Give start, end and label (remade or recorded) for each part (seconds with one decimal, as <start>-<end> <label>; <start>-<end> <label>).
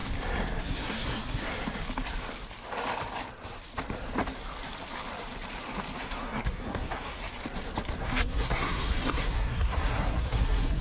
0.0-0.6 recorded; 0.6-1.5 remade; 1.5-6.0 recorded; 6.0-7.2 remade; 7.2-8.0 recorded; 8.0-10.8 remade